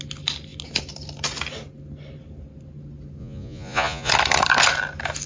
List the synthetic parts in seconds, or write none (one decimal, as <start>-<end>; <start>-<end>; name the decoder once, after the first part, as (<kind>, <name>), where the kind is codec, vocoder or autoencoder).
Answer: 3.2-4.1 (vocoder, Vocos)